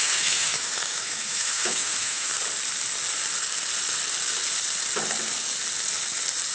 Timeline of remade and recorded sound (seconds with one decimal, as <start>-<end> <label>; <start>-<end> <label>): 0.0-2.3 remade; 2.3-6.5 recorded